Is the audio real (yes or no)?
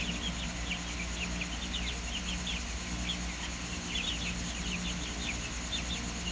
yes